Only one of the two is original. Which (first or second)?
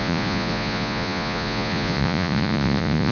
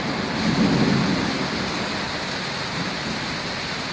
second